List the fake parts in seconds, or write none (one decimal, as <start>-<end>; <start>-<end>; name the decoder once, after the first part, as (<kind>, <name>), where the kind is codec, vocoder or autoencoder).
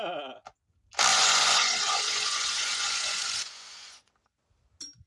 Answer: 1.1-4.1 (vocoder, Vocos)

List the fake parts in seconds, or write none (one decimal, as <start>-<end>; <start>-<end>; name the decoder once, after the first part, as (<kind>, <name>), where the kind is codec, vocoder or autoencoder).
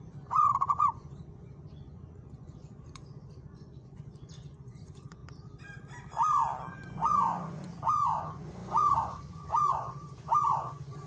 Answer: 0.0-5.2 (vocoder, Vocos); 6.7-11.1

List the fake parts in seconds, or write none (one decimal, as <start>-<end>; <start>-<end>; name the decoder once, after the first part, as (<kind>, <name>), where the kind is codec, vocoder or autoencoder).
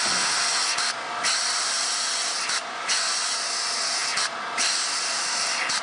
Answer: 2.6-3.2 (vocoder, Vocos)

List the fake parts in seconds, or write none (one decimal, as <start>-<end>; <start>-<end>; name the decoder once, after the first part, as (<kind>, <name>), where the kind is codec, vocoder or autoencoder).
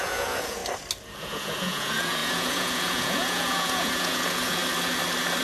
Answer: 0.0-0.6 (vocoder, Vocos); 1.2-4.6